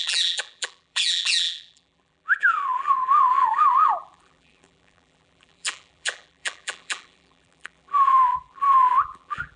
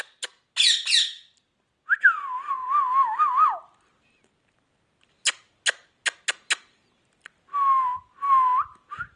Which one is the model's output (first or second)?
first